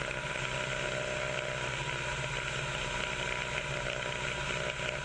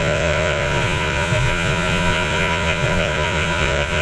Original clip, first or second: first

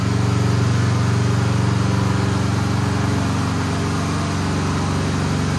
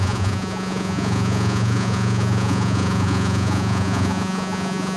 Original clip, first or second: first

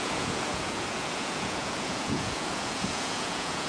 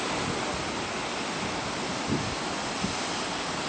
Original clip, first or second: second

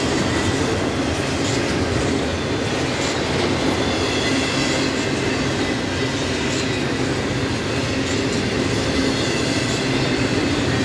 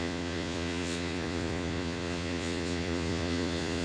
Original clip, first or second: first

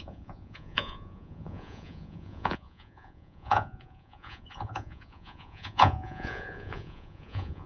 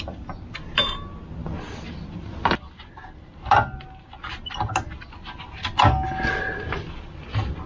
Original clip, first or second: second